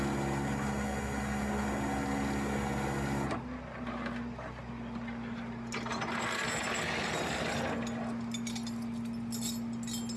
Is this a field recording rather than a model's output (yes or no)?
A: yes